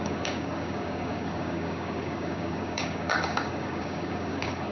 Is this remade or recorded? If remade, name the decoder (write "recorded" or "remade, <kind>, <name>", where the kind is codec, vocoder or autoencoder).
remade, codec, DAC